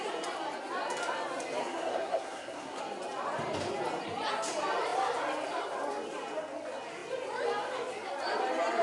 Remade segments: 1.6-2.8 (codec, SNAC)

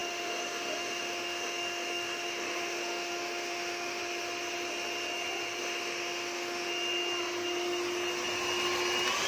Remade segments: 0.0-4.0 (autoencoder, DAC-VAE); 5.6-6.7